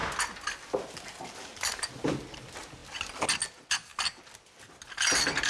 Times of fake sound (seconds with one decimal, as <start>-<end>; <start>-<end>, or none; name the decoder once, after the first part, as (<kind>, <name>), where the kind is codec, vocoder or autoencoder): none